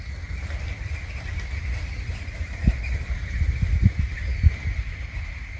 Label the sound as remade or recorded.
recorded